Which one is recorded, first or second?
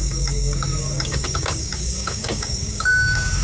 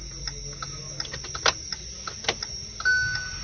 second